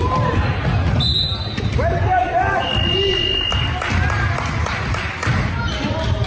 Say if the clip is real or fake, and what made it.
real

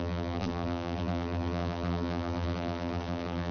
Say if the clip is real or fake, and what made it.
fake, vocoder, BigVGAN v2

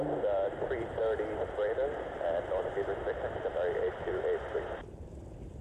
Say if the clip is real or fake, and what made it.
fake, vocoder, BigVGAN v2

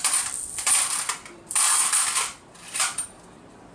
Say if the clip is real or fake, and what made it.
fake, vocoder, BigVGAN v2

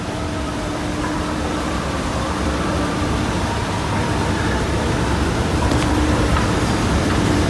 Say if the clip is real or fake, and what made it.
fake, vocoder, BigVGAN v2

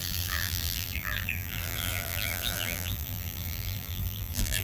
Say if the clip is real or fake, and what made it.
fake, vocoder, BigVGAN v2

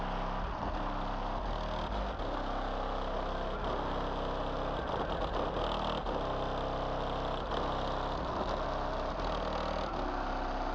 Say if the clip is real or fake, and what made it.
real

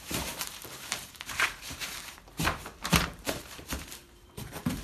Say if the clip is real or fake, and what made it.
fake, vocoder, BigVGAN v2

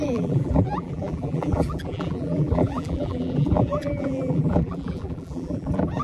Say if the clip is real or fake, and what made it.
fake, vocoder, BigVGAN v2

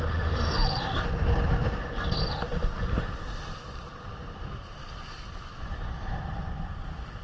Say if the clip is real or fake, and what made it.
fake, vocoder, BigVGAN v2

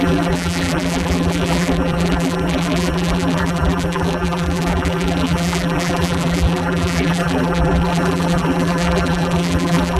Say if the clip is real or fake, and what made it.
fake, vocoder, BigVGAN v2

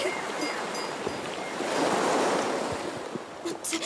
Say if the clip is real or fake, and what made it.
real